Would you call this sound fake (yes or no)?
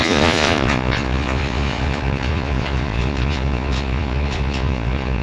yes